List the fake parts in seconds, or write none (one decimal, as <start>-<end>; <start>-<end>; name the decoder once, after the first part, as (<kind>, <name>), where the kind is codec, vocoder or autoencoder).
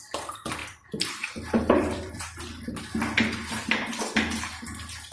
0.6-2.2 (vocoder, BigVGAN v2)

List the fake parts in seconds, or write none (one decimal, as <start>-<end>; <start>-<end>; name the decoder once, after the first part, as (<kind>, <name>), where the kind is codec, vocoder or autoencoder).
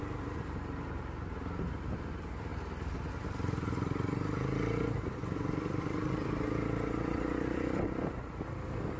0.0-2.5 (vocoder, BigVGAN v2); 3.1-9.0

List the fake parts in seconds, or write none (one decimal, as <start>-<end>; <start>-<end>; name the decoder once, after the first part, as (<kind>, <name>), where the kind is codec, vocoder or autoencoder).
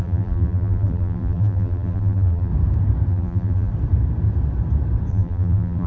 0.0-2.5 (vocoder, BigVGAN v2); 3.1-3.7; 5.1-5.9